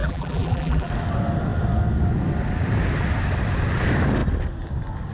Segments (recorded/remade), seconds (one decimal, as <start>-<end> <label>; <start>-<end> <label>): 0.0-0.9 remade; 0.9-5.1 recorded